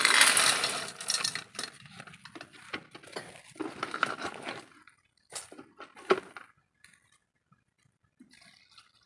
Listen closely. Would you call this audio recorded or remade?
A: recorded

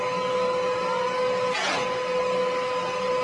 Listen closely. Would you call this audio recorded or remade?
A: recorded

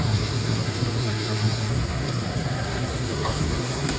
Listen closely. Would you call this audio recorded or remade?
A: remade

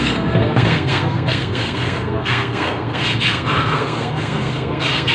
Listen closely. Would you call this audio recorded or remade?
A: remade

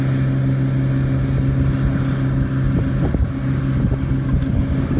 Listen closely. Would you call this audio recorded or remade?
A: recorded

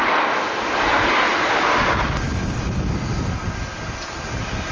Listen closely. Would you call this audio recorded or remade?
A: recorded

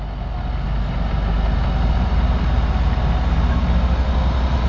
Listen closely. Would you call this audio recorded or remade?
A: recorded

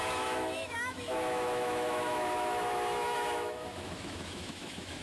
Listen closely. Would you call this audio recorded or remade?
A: remade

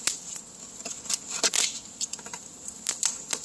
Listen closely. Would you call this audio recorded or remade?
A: recorded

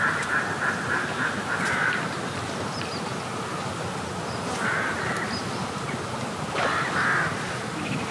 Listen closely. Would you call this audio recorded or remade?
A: recorded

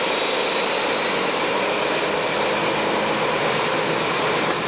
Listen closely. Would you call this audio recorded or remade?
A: recorded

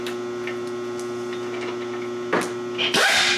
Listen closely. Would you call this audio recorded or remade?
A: recorded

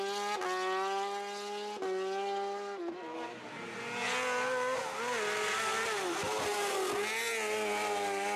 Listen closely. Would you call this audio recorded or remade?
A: recorded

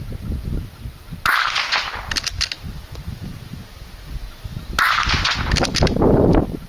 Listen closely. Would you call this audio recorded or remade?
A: recorded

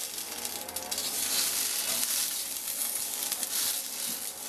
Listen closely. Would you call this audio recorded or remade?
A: recorded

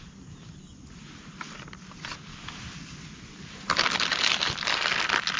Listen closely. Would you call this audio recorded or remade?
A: recorded